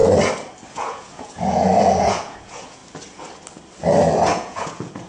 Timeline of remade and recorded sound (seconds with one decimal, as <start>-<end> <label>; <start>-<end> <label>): 0.0-0.7 recorded; 0.7-2.8 remade; 2.8-4.1 recorded; 4.1-5.1 remade